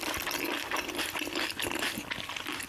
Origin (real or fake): real